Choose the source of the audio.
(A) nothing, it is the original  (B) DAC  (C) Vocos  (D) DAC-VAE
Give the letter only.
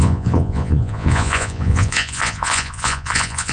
C